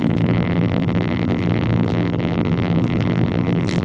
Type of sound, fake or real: fake